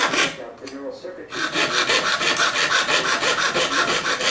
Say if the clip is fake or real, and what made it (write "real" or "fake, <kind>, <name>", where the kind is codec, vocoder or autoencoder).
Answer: real